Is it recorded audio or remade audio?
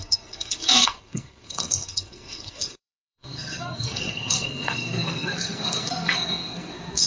remade